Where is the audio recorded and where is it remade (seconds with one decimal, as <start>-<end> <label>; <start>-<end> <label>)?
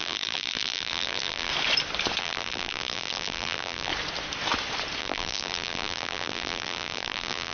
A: 0.0-1.5 remade; 1.5-2.2 recorded; 2.2-3.9 remade; 3.9-5.0 recorded; 5.0-7.5 remade